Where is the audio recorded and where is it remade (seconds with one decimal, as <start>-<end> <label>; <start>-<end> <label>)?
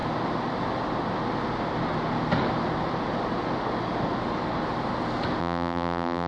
0.0-5.4 recorded; 5.4-6.3 remade